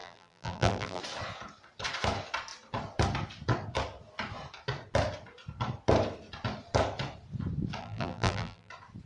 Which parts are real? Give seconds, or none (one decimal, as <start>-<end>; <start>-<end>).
1.0-7.8; 8.7-9.1